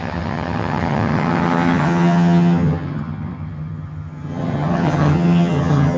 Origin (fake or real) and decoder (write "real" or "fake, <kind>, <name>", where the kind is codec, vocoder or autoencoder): fake, vocoder, HiFi-GAN